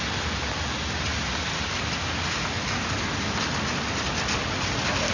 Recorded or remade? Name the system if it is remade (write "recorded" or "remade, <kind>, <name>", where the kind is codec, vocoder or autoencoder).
recorded